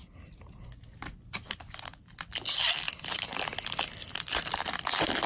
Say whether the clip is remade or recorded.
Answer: recorded